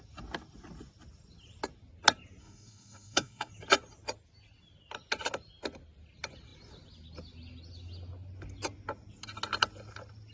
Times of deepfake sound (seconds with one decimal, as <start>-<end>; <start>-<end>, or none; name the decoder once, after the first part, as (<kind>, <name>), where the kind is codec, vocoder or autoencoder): 2.4-3.5 (codec, SNAC)